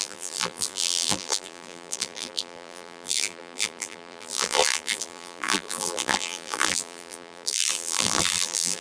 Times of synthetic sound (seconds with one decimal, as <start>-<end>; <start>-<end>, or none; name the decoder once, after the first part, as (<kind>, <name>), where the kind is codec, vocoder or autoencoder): 0.0-8.8 (vocoder, BigVGAN v2)